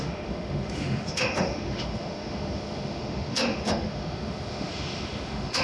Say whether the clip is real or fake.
fake